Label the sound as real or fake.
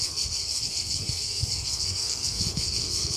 fake